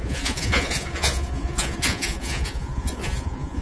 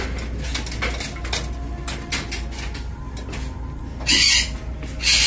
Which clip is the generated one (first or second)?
first